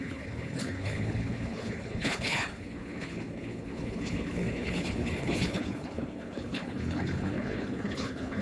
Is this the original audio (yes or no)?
no